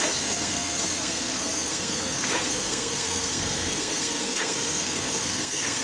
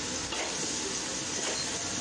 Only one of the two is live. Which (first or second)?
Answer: second